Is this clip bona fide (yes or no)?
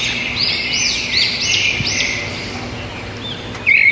yes